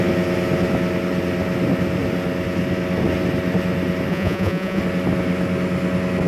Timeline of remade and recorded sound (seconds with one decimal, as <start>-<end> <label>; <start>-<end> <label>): 0.0-4.1 recorded; 4.1-4.8 remade; 4.8-6.3 recorded